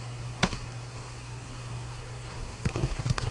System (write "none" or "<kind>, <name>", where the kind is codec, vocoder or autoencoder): codec, SNAC